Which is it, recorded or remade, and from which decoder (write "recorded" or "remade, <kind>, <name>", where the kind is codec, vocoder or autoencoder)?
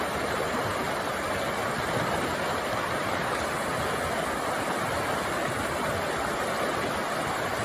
recorded